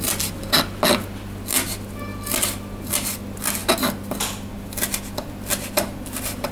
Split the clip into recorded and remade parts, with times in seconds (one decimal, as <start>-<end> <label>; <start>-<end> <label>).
0.0-6.5 recorded